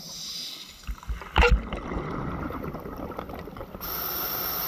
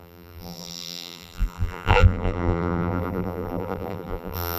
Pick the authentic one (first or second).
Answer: first